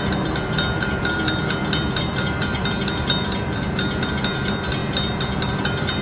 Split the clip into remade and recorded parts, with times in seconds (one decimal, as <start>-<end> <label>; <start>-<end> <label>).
0.0-4.8 remade; 4.8-5.4 recorded; 5.4-6.0 remade